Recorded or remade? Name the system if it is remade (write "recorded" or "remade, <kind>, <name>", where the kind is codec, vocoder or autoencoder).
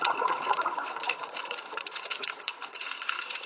remade, vocoder, Vocos